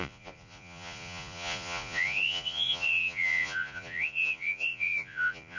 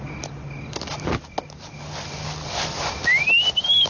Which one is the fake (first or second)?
first